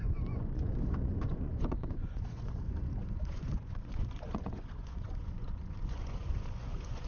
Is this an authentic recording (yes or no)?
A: no